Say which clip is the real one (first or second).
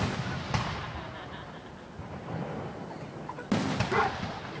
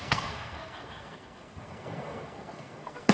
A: first